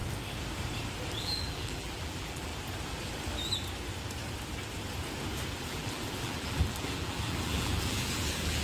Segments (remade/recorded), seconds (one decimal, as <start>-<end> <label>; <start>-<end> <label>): 0.0-1.2 recorded; 1.2-2.5 remade; 2.5-5.6 recorded; 5.6-8.6 remade